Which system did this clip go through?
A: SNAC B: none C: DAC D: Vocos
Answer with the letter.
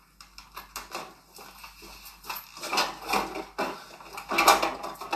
B